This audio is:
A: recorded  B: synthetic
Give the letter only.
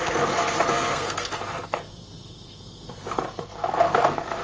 B